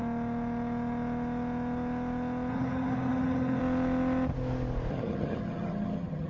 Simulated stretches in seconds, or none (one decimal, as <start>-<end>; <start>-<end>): 2.5-3.6; 4.9-6.3